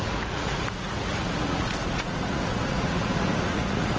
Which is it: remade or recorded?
remade